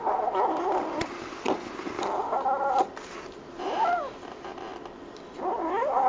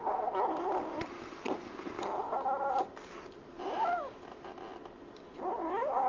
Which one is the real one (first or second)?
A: second